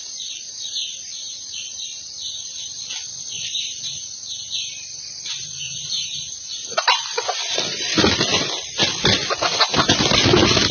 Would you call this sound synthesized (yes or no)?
yes